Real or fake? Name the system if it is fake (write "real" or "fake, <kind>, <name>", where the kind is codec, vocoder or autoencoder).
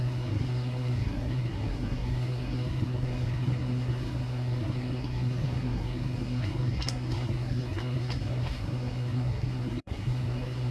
fake, codec, SNAC